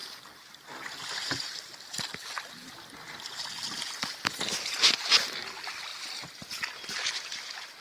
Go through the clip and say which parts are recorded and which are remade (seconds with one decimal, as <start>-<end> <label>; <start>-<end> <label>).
0.0-7.8 recorded